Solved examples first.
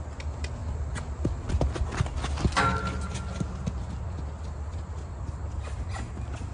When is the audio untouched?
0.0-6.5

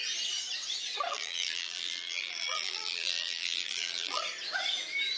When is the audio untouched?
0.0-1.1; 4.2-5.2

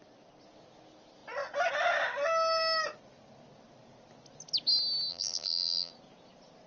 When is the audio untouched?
0.0-5.1; 5.9-6.7